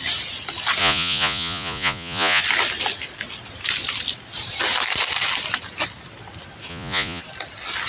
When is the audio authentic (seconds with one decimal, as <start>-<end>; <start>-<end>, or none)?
0.0-0.8; 2.4-6.7; 7.2-7.9